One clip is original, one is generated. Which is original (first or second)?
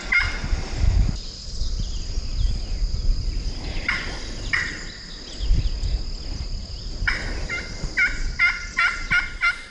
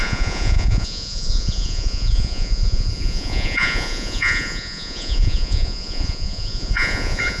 first